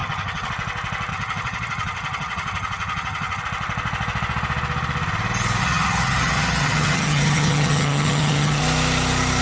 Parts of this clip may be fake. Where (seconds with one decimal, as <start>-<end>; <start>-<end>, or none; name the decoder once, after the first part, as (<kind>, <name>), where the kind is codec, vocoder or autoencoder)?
0.0-0.5 (vocoder, HiFi-GAN); 1.1-3.4; 5.6-8.6

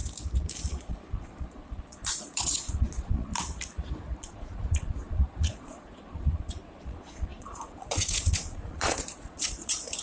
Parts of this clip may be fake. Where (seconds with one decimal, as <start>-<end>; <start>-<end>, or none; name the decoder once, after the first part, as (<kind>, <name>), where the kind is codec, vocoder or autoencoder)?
0.7-3.3 (vocoder, Vocos); 4.2-10.0

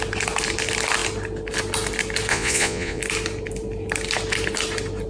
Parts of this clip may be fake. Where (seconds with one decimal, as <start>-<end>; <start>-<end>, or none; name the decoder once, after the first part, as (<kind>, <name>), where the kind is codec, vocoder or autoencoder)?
2.3-3.0 (vocoder, Vocos)

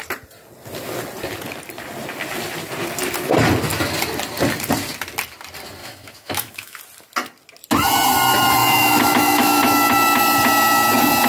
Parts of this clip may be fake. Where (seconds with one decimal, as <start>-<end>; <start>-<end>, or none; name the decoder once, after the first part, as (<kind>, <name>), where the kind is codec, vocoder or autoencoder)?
5.8-6.8 (autoencoder, DAC-VAE); 8.6-9.6

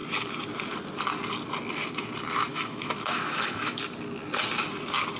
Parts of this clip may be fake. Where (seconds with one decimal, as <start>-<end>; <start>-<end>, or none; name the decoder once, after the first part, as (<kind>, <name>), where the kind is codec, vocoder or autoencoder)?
2.5-3.8 (autoencoder, DAC-VAE)

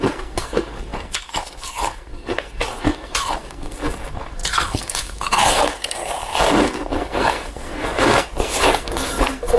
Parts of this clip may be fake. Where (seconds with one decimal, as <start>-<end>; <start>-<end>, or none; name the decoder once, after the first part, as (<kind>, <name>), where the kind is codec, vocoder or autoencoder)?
0.0-9.6 (codec, SNAC)

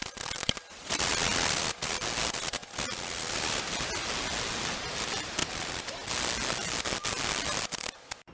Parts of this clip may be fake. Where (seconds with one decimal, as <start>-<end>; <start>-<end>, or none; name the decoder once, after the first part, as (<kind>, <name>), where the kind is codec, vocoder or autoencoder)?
none